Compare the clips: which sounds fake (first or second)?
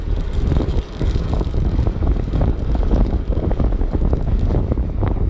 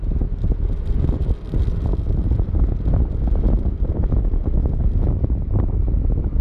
first